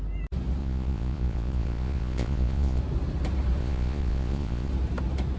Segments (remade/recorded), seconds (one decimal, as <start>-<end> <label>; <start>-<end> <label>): 0.0-0.6 recorded; 0.6-2.8 remade; 2.8-3.6 recorded; 3.6-4.7 remade; 4.7-5.4 recorded

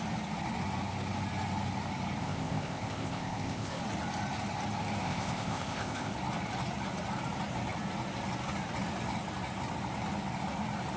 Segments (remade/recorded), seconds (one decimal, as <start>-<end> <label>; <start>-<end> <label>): 0.0-2.2 recorded; 2.2-3.8 remade; 3.8-5.0 recorded; 5.0-6.1 remade; 6.1-11.0 recorded

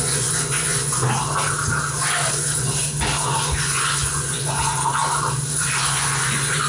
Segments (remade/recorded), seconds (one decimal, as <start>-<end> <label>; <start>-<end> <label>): 0.0-1.0 remade; 1.0-3.6 recorded; 3.6-5.0 remade; 5.0-5.6 recorded; 5.6-6.7 remade

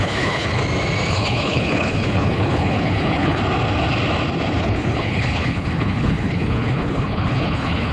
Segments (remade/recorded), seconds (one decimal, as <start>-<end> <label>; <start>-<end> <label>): 0.0-0.6 remade; 0.6-1.1 recorded; 1.1-3.4 remade; 3.4-4.6 recorded; 4.6-7.9 remade

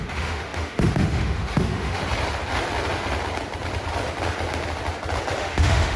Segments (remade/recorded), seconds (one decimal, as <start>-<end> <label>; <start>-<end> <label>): 0.0-2.0 remade; 2.0-5.4 recorded; 5.4-6.0 remade

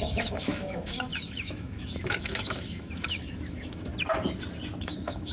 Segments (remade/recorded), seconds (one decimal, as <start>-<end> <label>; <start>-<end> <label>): 0.0-3.9 remade; 3.9-4.8 recorded; 4.8-5.3 remade

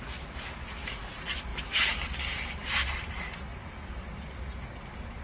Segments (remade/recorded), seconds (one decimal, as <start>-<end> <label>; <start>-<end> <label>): 0.0-1.5 recorded; 1.5-3.1 remade; 3.1-3.5 recorded; 3.5-4.1 remade; 4.1-5.2 recorded